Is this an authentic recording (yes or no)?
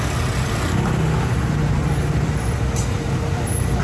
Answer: yes